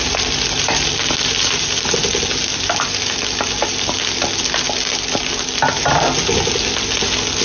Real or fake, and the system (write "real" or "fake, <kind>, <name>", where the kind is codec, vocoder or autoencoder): real